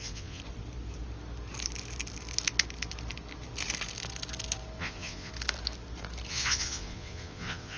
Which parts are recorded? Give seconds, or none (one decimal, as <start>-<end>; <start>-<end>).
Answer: 0.4-4.8; 5.3-6.3